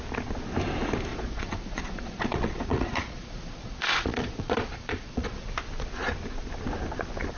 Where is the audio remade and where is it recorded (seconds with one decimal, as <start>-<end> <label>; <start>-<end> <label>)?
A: 0.0-1.1 recorded; 1.1-5.5 remade; 5.5-7.4 recorded